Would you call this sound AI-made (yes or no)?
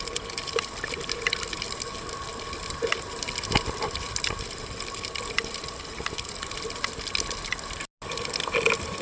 no